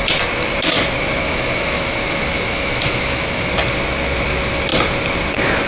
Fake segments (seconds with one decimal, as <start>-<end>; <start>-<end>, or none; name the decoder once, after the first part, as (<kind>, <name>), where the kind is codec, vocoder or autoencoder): 1.2-3.5 (autoencoder, DAC-VAE)